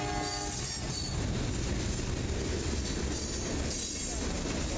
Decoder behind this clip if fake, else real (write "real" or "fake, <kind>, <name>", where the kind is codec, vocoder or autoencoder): real